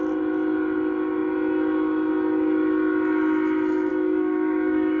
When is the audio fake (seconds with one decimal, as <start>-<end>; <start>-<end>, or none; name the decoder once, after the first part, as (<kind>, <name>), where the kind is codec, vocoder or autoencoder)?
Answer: 3.9-5.0 (codec, DAC)

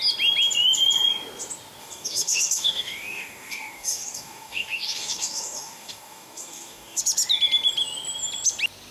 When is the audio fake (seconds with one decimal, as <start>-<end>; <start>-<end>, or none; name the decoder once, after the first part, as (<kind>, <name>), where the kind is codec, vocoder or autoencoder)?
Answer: 1.8-7.0 (codec, DAC)

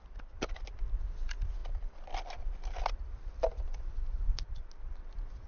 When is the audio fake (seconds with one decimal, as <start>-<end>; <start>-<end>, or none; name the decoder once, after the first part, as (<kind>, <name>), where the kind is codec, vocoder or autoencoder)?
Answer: none

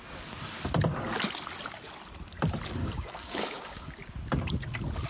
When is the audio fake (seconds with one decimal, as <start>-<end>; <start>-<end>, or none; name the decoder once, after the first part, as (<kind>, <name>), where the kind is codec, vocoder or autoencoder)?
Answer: 2.8-3.9 (codec, DAC)

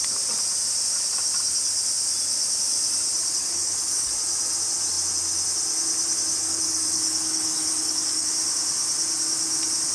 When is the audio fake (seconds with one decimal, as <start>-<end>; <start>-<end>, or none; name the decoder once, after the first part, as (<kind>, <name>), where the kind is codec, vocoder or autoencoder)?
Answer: 3.4-4.1 (codec, DAC); 6.4-8.3

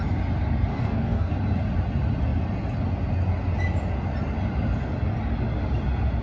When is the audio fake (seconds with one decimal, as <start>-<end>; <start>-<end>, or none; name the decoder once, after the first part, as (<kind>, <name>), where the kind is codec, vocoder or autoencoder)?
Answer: 0.7-1.3 (codec, DAC)